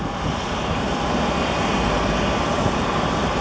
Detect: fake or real real